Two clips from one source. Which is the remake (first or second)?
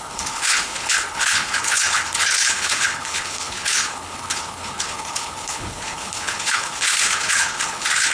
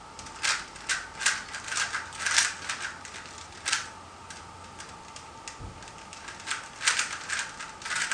first